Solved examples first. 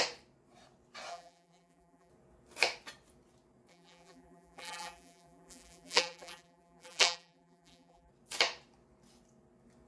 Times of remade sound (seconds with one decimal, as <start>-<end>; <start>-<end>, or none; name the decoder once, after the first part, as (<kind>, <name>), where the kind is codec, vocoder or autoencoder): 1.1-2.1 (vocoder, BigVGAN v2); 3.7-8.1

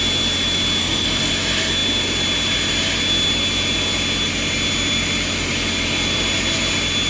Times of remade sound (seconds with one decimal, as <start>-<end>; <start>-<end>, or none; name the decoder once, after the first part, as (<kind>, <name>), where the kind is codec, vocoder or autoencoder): 0.8-1.3 (codec, SNAC)

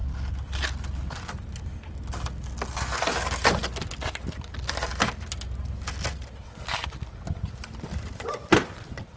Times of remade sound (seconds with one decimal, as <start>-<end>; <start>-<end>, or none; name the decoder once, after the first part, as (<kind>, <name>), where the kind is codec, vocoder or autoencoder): 0.0-0.6 (vocoder, BigVGAN v2)

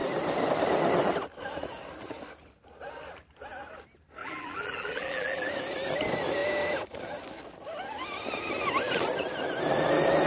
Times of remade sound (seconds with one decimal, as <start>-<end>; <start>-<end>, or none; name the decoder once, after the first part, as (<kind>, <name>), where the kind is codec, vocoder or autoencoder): 4.2-5.5 (vocoder, BigVGAN v2)

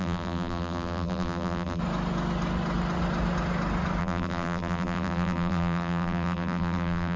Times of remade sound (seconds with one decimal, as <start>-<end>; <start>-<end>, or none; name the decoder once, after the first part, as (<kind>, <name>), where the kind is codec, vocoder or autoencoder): 0.0-1.8 (vocoder, BigVGAN v2); 4.0-7.2

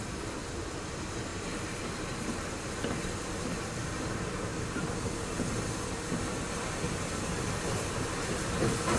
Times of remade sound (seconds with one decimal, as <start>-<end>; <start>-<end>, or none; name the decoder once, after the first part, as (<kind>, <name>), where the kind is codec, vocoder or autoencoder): 0.4-0.9 (vocoder, BigVGAN v2); 1.3-1.8